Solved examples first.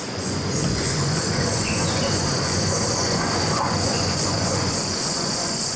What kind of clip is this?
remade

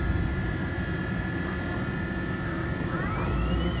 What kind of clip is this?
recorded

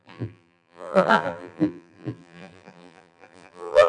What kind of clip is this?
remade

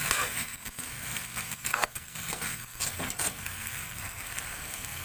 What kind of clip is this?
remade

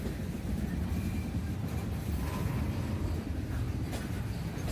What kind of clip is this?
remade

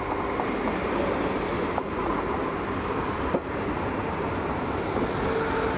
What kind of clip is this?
recorded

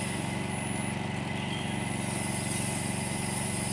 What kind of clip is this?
recorded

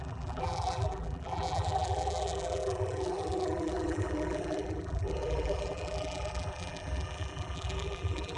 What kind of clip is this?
remade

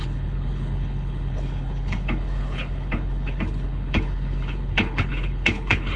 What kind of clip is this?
remade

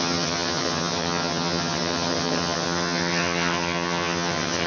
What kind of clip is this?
remade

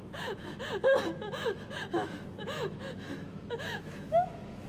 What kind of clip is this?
remade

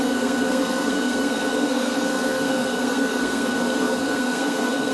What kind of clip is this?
remade